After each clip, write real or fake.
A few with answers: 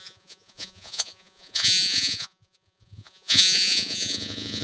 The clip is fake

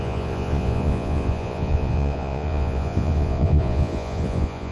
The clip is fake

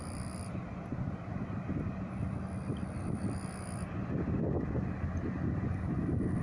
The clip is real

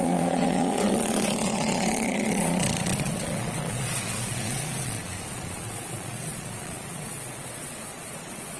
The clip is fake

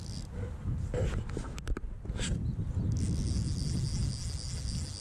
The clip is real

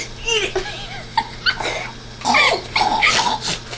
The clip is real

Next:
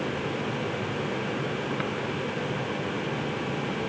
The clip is real